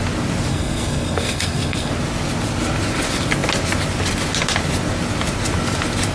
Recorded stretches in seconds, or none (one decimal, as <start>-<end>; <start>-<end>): 0.0-0.5; 1.9-6.1